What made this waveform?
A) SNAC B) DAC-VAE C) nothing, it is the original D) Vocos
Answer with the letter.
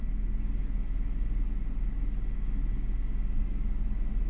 C